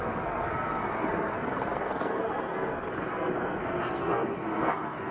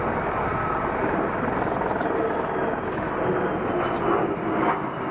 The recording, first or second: second